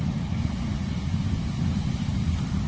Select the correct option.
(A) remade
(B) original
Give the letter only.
B